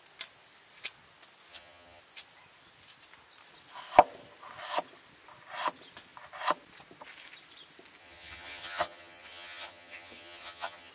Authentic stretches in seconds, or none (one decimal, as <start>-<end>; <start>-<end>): 0.0-1.5; 2.0-8.0